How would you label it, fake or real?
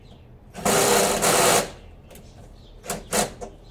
real